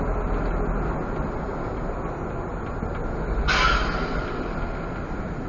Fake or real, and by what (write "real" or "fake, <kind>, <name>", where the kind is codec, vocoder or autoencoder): real